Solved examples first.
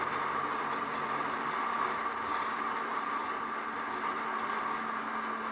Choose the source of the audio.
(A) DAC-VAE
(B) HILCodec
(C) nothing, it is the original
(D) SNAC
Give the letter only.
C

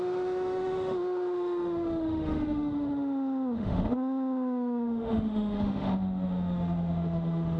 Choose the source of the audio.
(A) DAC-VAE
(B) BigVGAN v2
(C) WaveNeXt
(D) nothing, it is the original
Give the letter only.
A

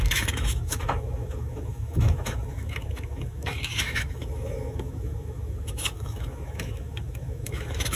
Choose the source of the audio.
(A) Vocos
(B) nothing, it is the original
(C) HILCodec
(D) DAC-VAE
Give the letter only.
D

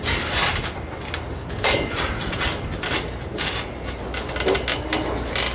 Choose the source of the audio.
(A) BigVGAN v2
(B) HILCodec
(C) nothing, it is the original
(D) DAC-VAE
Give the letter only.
C